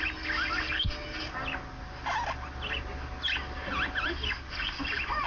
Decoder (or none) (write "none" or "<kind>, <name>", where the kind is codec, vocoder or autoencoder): none